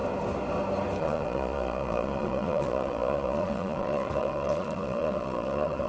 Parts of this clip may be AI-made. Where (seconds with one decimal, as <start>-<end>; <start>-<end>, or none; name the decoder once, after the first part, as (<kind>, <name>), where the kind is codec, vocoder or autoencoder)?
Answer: 1.0-5.9 (vocoder, Vocos)

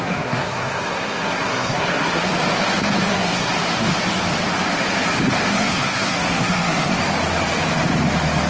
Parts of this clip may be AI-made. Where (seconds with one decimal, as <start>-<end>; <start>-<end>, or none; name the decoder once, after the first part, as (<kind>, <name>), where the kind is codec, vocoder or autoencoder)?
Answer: 0.0-2.3 (codec, SNAC); 3.1-3.5; 5.5-7.0

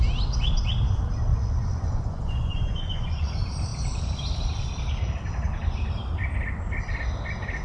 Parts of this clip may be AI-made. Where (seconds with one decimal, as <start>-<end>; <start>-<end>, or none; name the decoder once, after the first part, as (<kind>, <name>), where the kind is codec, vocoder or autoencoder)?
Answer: 1.3-3.3 (vocoder, Vocos)

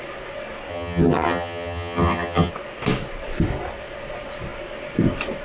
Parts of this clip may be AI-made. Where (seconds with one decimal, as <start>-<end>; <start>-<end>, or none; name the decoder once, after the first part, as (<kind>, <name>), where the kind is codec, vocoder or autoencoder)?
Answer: 0.7-2.5 (vocoder, HiFi-GAN)